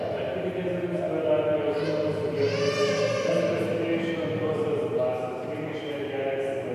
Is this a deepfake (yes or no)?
no